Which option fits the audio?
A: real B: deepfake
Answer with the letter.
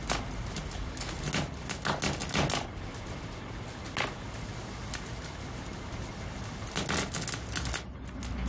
A